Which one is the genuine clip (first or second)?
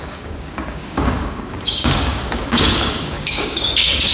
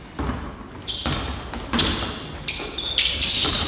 second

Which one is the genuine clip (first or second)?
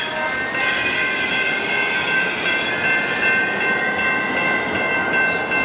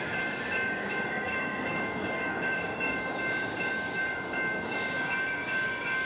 first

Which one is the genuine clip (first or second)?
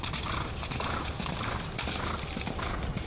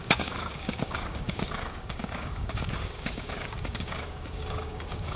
first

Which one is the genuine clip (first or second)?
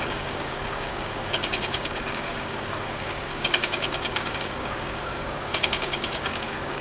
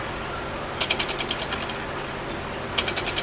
second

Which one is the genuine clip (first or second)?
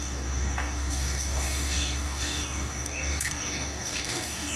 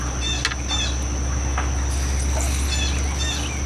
second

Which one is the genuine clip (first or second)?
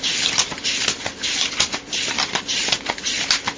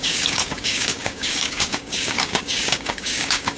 first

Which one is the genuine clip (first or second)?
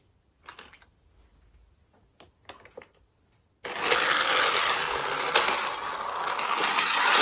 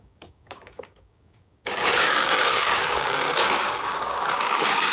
first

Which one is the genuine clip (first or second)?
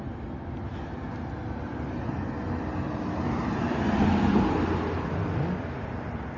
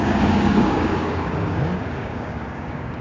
first